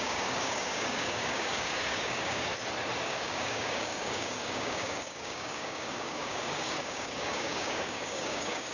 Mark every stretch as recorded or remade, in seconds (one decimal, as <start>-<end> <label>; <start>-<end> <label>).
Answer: 0.0-2.5 remade; 2.5-3.0 recorded; 3.0-8.7 remade

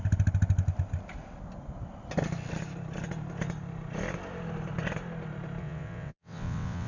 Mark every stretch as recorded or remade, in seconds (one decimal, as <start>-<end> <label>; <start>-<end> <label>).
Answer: 0.0-5.6 recorded; 5.6-6.9 remade

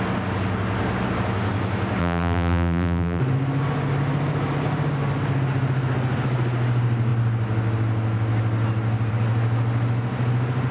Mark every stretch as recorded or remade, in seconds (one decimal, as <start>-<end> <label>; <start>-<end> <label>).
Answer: 0.0-2.0 recorded; 2.0-3.2 remade; 3.2-10.7 recorded

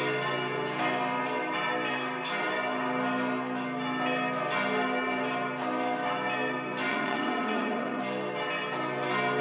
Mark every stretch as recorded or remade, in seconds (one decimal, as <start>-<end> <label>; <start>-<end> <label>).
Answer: 0.0-6.9 recorded; 6.9-8.0 remade; 8.0-9.4 recorded

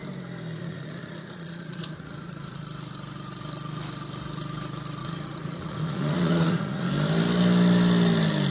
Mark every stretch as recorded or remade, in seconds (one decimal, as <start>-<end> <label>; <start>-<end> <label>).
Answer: 0.0-0.6 recorded; 0.6-2.6 remade; 2.6-5.0 recorded; 5.0-6.8 remade; 6.8-8.5 recorded

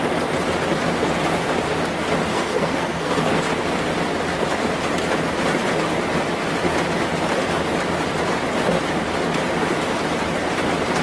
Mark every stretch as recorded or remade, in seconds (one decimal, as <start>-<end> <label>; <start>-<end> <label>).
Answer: 0.0-2.3 recorded; 2.3-3.4 remade; 3.4-11.0 recorded